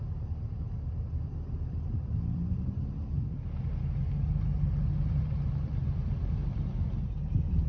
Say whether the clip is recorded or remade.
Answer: recorded